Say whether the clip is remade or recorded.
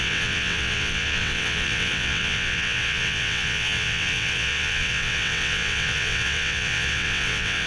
remade